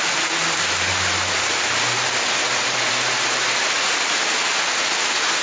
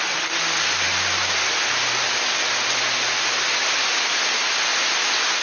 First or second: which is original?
second